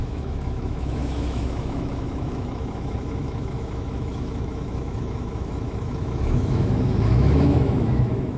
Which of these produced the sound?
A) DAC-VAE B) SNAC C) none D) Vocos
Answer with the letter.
A